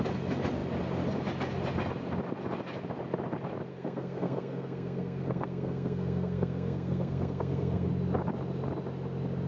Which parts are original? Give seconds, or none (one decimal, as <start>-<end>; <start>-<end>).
0.0-3.7; 7.9-9.5